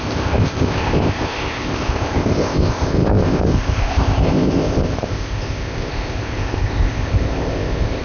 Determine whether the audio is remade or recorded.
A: remade